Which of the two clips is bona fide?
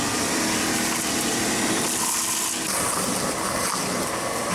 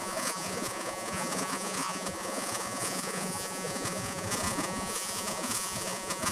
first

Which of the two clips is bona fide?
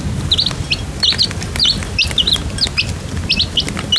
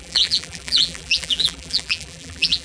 first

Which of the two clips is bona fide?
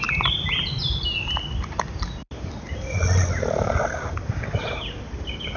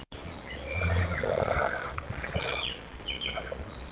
first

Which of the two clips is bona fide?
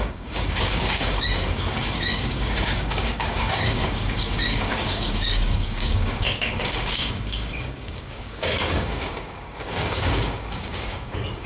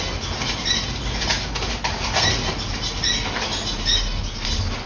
second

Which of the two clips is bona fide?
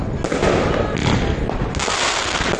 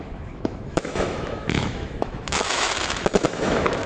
first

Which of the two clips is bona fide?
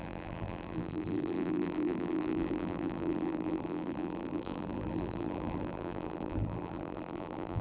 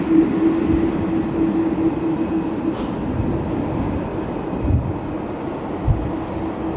second